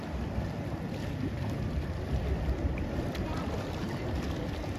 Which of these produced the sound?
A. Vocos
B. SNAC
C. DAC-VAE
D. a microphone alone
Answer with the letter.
D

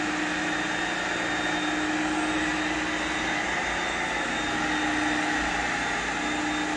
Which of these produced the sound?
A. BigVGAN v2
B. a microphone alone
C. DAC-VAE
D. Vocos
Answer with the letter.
B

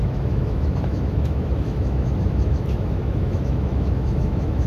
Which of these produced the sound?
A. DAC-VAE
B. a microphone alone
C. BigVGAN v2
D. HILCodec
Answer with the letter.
A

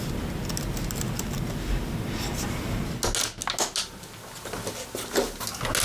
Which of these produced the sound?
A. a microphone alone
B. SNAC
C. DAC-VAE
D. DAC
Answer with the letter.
A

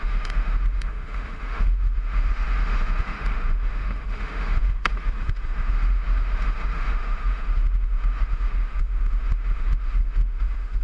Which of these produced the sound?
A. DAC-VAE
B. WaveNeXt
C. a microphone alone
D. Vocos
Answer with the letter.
A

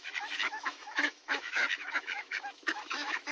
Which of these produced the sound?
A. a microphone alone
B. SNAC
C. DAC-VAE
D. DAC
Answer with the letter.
C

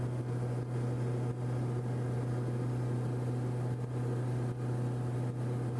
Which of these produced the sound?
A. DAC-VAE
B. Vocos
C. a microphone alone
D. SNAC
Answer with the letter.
C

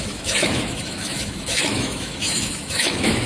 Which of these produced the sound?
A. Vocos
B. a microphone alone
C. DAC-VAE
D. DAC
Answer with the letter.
C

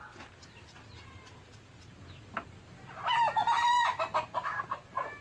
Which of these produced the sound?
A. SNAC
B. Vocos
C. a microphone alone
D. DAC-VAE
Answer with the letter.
C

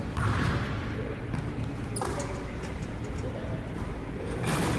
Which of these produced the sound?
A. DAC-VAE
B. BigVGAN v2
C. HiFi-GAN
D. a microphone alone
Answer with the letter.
D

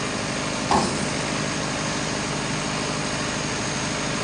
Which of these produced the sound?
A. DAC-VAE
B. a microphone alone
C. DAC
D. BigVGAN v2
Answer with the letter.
B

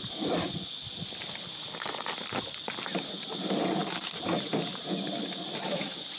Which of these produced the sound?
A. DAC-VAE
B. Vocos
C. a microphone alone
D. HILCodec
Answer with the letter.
C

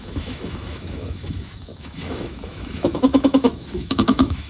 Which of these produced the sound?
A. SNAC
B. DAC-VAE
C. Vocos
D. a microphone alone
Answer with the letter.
B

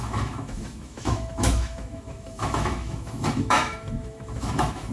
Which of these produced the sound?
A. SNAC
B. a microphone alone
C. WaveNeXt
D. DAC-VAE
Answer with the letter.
D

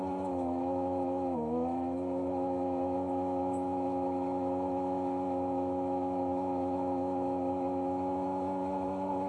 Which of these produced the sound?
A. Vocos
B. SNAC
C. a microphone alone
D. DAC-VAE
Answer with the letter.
D